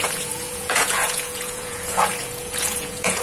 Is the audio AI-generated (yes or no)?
yes